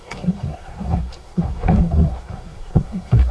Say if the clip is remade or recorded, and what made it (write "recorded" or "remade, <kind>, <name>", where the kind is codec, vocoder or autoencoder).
remade, codec, SNAC